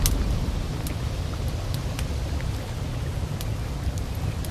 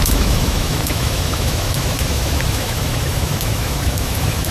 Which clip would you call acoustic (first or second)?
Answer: first